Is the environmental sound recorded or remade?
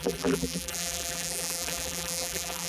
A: remade